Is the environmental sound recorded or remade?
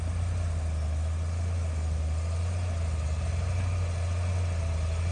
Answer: recorded